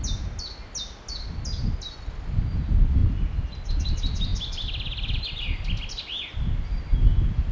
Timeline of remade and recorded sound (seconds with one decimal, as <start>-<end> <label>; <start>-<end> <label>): 0.0-7.5 recorded